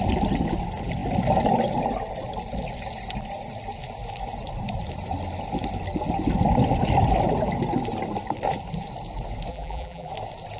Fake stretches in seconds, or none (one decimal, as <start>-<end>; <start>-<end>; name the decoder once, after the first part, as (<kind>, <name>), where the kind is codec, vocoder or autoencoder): 9.5-10.1 (vocoder, BigVGAN v2)